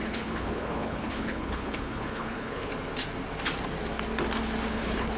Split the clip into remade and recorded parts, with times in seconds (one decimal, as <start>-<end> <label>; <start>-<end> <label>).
0.0-2.7 remade; 2.7-4.7 recorded; 4.7-5.2 remade